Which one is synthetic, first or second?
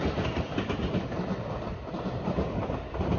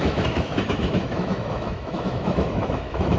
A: second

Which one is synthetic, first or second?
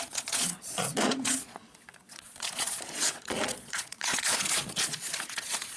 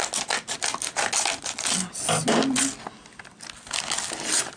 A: first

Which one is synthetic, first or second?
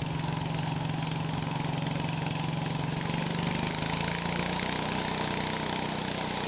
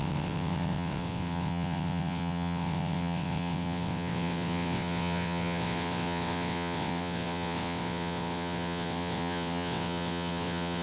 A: second